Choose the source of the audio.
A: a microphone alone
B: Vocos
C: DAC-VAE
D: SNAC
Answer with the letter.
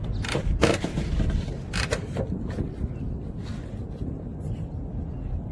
A